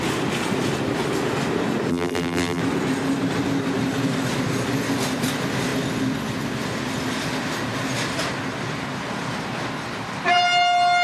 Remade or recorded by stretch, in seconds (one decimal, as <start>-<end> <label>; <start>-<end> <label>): 0.0-1.9 recorded; 1.9-2.6 remade; 2.6-11.0 recorded